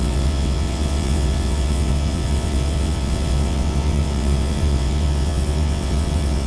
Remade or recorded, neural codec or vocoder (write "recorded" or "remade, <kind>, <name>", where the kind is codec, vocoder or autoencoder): remade, vocoder, WaveNeXt